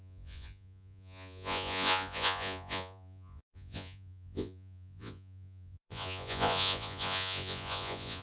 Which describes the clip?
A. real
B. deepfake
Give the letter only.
B